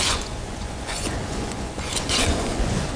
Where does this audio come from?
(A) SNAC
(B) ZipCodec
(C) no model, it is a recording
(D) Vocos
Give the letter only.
D